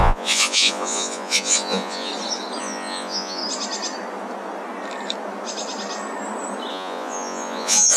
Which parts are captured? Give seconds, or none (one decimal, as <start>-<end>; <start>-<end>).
2.1-2.6; 3.4-6.7